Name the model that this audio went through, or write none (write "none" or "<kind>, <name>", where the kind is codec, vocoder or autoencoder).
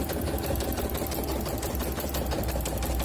none